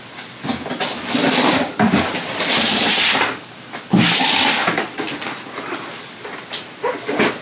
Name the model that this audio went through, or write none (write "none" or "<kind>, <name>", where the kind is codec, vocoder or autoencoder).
none